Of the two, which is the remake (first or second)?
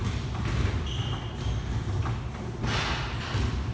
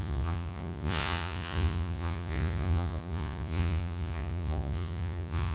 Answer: second